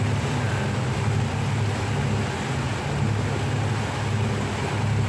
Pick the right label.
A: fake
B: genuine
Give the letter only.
B